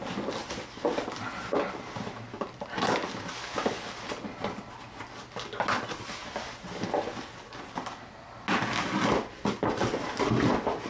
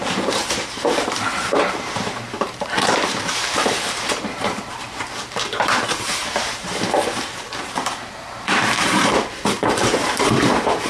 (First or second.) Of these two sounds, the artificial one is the second